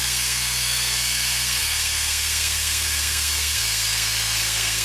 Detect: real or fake fake